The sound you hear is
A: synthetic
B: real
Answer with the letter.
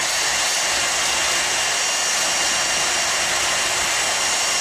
B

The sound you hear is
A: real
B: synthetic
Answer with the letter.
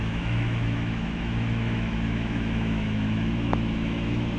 B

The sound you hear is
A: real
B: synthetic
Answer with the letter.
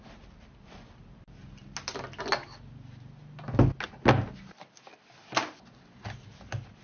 A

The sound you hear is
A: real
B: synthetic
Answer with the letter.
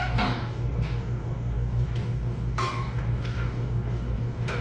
B